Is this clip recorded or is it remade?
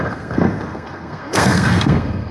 remade